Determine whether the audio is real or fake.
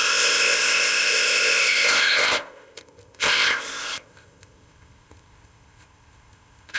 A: fake